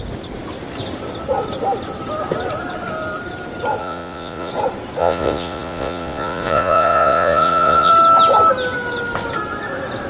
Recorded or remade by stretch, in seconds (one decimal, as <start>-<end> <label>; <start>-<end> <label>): 0.0-3.8 recorded; 3.8-4.5 remade; 4.5-5.0 recorded; 5.0-7.9 remade; 7.9-10.1 recorded